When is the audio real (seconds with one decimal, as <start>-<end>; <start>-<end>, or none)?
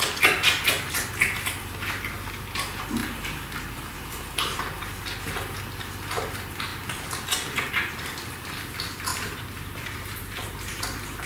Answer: 0.0-3.0; 5.0-9.1; 10.8-11.3